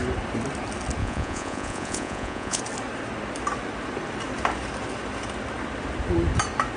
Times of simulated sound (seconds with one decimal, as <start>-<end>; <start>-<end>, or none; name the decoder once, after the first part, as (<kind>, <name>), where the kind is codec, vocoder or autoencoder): 1.0-2.6 (vocoder, Vocos)